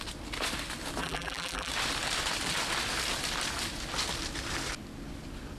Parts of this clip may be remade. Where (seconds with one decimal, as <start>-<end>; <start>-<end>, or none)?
1.0-1.7